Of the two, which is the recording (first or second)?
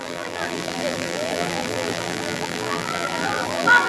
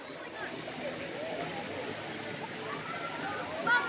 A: second